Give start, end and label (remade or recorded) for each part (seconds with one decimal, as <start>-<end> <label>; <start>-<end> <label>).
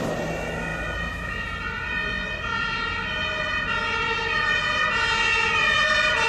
0.0-6.3 recorded